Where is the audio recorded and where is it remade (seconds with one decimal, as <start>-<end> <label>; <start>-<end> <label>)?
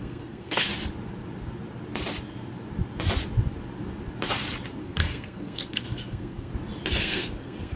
0.0-0.7 remade; 0.7-4.8 recorded; 4.8-6.5 remade; 6.5-7.0 recorded; 7.0-7.8 remade